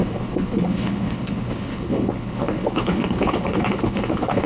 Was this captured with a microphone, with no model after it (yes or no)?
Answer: no